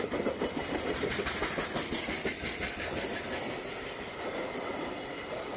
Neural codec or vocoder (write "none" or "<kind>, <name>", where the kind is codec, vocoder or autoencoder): none